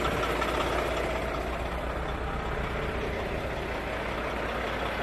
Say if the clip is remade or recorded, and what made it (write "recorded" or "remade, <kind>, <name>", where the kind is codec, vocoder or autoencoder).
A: recorded